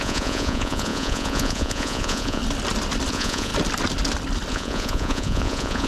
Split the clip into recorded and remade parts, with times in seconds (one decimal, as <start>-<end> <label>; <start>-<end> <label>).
0.0-2.4 remade; 2.4-3.1 recorded; 3.1-3.5 remade; 3.5-4.5 recorded; 4.5-5.9 remade